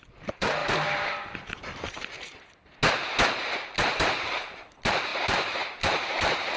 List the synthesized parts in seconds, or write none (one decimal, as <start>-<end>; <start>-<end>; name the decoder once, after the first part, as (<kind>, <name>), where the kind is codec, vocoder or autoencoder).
0.0-2.3 (vocoder, BigVGAN v2); 3.4-6.6